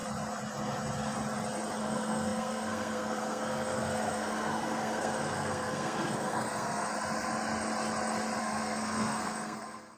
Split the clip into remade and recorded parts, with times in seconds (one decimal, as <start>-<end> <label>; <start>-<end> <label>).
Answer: 0.0-1.8 recorded; 1.8-6.9 remade; 6.9-8.4 recorded; 8.4-10.0 remade